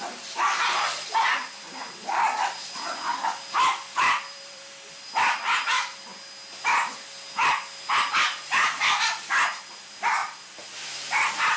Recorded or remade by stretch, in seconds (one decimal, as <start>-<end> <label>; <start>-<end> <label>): 0.0-1.4 remade; 1.4-3.9 recorded; 3.9-6.1 remade; 6.1-8.1 recorded; 8.1-11.6 remade